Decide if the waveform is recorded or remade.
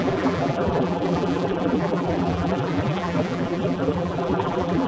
remade